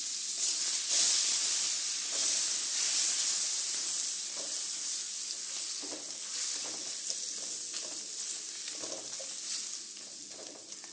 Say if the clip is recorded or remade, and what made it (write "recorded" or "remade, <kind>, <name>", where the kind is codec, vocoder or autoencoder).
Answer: recorded